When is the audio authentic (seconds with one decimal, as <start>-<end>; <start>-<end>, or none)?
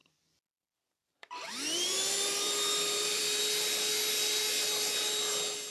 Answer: 3.4-5.7